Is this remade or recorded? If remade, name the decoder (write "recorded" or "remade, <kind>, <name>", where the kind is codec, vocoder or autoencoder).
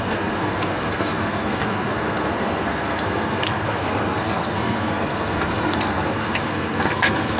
remade, codec, SNAC